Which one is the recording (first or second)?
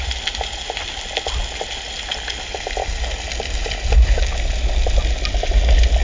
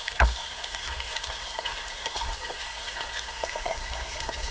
first